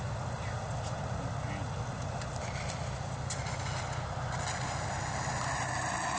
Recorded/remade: recorded